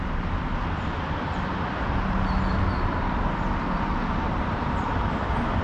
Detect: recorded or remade recorded